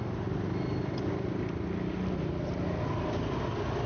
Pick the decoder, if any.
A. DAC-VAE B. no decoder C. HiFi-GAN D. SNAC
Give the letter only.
B